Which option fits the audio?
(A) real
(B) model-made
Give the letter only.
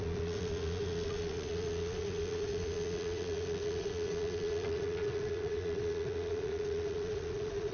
B